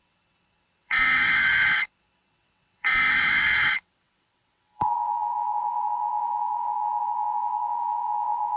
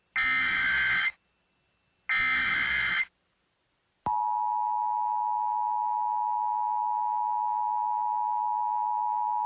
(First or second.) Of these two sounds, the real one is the second